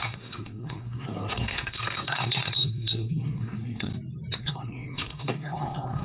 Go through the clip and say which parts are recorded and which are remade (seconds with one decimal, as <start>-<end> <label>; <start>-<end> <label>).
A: 0.0-3.9 remade; 3.9-4.4 recorded; 4.4-6.0 remade

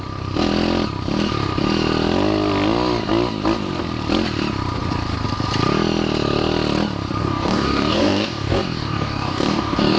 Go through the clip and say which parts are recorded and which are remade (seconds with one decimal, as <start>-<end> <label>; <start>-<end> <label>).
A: 0.0-7.2 recorded; 7.2-10.0 remade

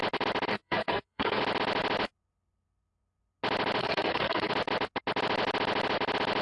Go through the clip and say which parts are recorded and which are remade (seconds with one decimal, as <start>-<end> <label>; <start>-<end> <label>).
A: 0.0-0.5 recorded; 0.5-1.4 remade; 1.4-3.8 recorded; 3.8-4.5 remade; 4.5-6.4 recorded

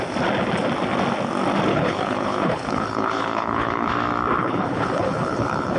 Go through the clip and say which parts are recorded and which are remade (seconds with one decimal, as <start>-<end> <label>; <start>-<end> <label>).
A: 0.0-1.7 recorded; 1.7-3.9 remade; 3.9-4.4 recorded; 4.4-5.8 remade

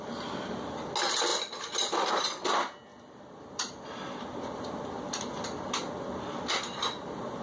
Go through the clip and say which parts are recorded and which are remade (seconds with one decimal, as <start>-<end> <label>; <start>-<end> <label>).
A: 0.0-1.3 recorded; 1.3-2.2 remade; 2.2-2.9 recorded; 2.9-4.2 remade; 4.2-7.4 recorded

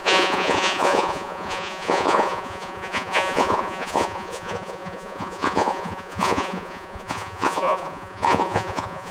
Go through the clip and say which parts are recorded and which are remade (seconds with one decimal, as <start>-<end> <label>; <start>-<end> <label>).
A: 0.0-9.1 remade